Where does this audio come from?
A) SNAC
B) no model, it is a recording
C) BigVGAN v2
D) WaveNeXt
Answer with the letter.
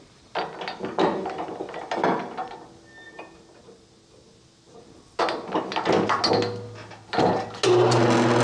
B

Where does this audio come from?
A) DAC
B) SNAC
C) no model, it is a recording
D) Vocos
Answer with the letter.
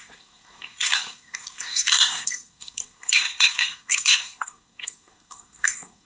B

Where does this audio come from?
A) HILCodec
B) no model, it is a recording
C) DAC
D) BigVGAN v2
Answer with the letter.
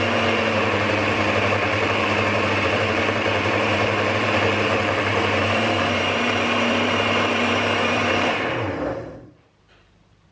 D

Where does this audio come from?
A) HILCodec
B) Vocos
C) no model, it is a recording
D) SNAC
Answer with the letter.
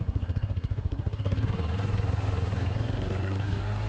D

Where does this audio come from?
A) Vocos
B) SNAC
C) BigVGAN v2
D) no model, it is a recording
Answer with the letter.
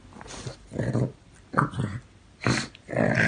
D